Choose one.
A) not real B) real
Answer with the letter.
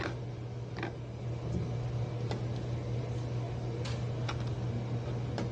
B